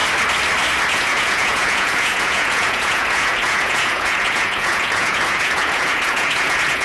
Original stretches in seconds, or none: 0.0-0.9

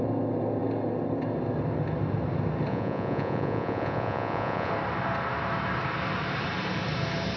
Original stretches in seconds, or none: 0.0-2.7; 4.7-7.4

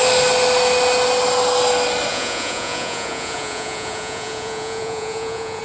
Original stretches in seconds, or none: 0.0-2.1